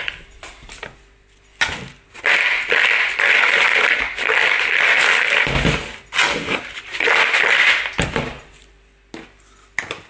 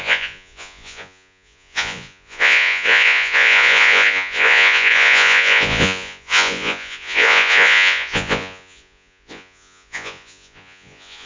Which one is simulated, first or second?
second